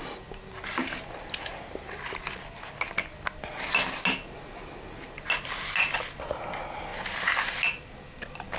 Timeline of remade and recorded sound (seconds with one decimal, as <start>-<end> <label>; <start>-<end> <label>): 0.0-8.6 recorded